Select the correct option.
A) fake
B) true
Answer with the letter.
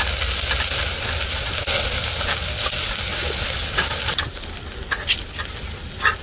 B